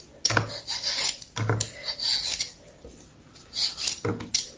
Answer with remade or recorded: recorded